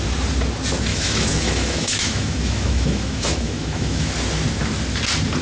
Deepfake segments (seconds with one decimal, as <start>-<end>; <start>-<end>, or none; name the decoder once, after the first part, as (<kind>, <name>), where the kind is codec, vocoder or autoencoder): 0.9-4.1 (autoencoder, DAC-VAE)